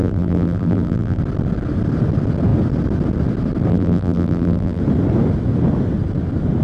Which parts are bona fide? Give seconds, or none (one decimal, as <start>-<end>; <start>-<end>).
1.2-3.7; 4.8-6.6